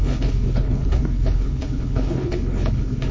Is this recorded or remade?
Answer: remade